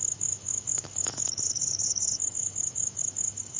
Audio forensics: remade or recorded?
remade